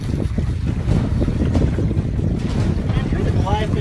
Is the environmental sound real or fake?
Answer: real